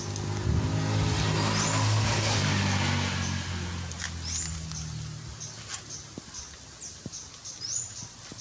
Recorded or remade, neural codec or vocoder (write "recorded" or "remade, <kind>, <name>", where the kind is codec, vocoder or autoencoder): recorded